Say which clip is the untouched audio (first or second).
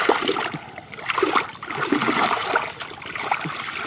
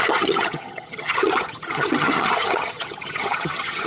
first